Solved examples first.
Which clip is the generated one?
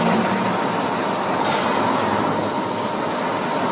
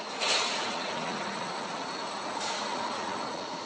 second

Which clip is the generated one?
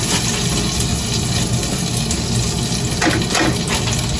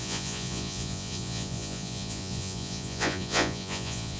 second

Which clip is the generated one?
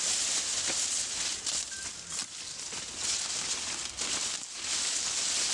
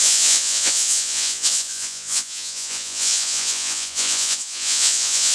second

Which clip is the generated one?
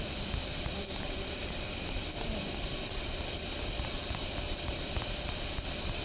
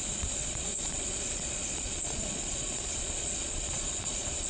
second